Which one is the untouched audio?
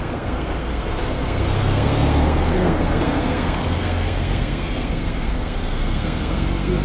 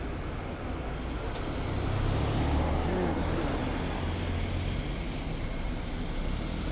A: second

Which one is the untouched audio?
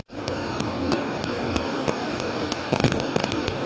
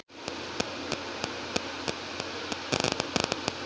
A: second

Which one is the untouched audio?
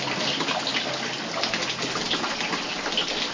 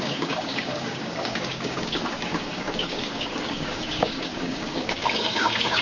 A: first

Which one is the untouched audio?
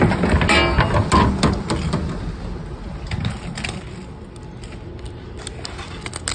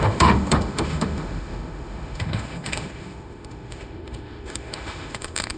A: first